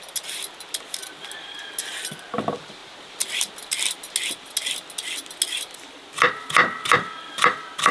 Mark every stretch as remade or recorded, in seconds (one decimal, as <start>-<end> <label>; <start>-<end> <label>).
0.0-7.9 recorded